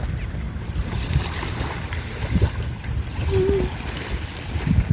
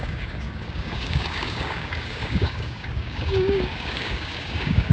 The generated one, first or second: second